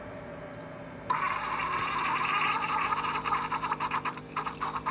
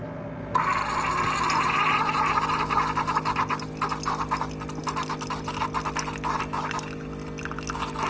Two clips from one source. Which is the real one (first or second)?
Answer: second